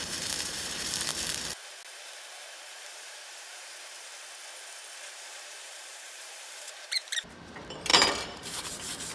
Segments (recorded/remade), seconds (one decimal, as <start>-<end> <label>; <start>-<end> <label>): 0.0-1.1 remade; 1.1-2.7 recorded; 2.7-4.1 remade; 4.1-5.1 recorded; 5.1-9.1 remade